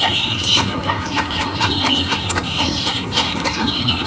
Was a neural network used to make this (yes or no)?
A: yes